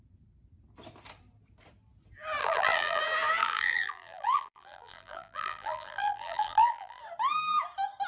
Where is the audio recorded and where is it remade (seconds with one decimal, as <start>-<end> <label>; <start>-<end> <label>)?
0.0-2.4 recorded; 2.4-3.0 remade; 3.0-3.4 recorded; 3.4-7.0 remade; 7.0-8.1 recorded